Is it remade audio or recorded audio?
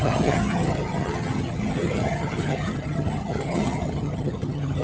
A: remade